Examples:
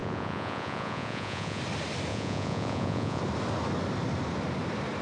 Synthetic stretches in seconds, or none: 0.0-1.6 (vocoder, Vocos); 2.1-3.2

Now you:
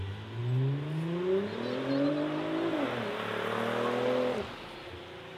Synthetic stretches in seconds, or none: none

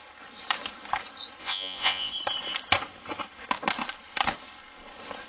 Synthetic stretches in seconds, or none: 1.4-2.1 (vocoder, Vocos)

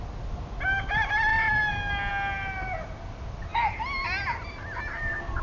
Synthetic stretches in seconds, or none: none

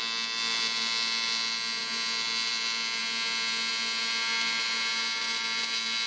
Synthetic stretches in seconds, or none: none

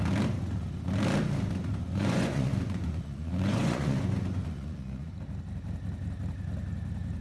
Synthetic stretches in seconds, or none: 1.8-5.1 (vocoder, Vocos)

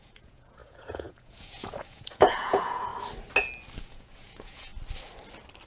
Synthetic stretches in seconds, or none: 0.0-2.9 (vocoder, Vocos); 3.8-4.7

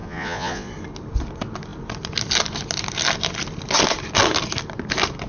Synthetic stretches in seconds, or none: 0.0-0.7 (vocoder, Vocos)